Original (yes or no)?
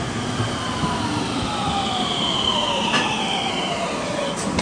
no